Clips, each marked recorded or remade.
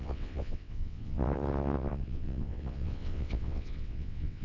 remade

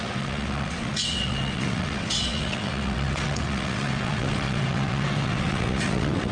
remade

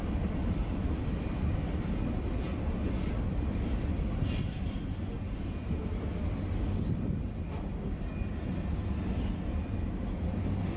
recorded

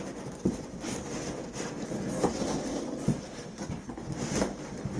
recorded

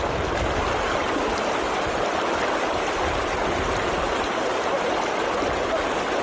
recorded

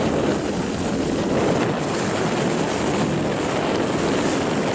recorded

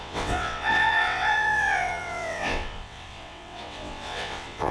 remade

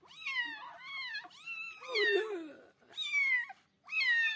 recorded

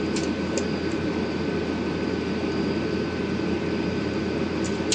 recorded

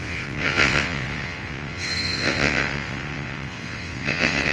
remade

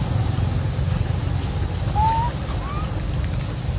recorded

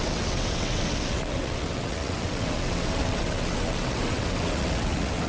remade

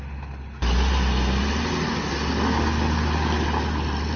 recorded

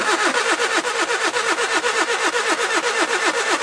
recorded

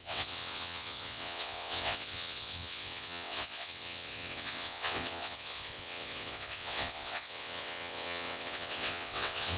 remade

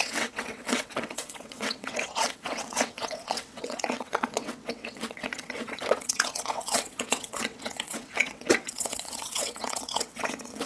remade